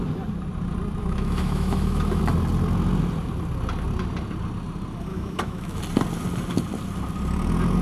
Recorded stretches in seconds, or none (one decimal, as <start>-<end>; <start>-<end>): 0.0-1.0; 2.2-5.1; 5.8-7.8

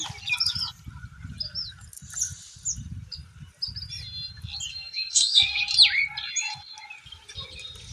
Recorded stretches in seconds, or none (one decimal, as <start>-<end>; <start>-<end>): 0.0-4.7; 5.6-7.9

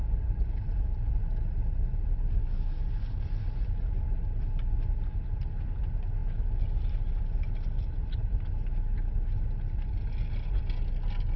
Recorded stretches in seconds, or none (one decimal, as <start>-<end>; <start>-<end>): 0.0-2.4; 3.2-11.4

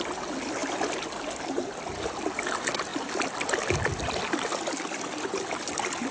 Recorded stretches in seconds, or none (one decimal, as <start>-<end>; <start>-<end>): 0.0-6.1

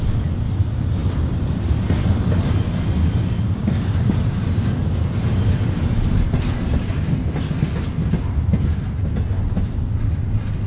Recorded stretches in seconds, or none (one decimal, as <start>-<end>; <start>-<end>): 0.0-10.7

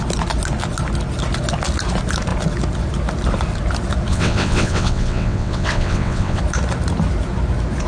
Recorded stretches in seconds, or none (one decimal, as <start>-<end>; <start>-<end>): 0.0-4.1; 6.4-7.9

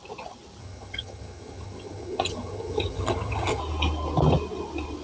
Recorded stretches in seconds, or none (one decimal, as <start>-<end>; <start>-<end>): 0.0-0.6; 3.6-5.0

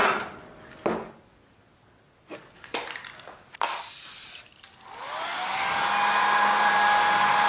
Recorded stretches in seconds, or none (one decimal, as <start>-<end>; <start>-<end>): 0.0-7.5